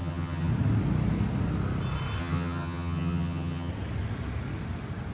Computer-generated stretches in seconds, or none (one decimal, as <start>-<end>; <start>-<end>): 0.0-0.5; 2.2-3.7